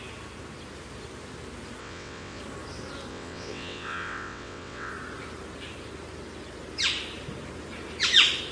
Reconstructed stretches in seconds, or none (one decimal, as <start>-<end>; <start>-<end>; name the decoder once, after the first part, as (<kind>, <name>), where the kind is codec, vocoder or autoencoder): 1.8-2.4 (vocoder, WaveNeXt); 3.1-4.9